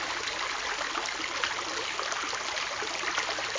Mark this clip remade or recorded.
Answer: recorded